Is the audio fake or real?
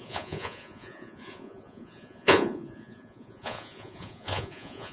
fake